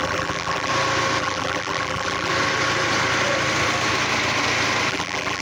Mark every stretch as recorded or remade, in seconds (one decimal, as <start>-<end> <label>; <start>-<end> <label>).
0.0-0.7 remade; 0.7-1.2 recorded; 1.2-2.3 remade; 2.3-4.9 recorded; 4.9-5.4 remade